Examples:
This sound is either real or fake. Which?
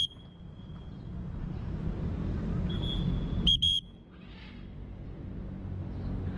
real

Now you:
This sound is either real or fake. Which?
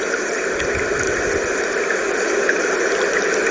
real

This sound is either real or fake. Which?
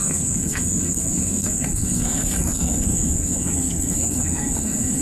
fake